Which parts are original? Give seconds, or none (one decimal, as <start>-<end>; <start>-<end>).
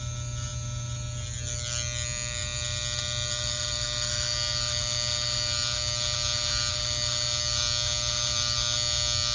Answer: 0.0-9.3